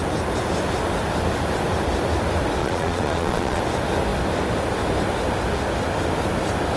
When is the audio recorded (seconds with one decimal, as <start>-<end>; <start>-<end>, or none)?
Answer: 0.0-2.6; 3.6-6.8